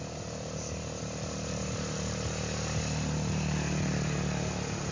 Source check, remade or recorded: recorded